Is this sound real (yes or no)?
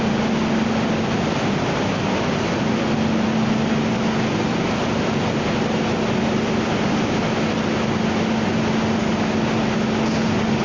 yes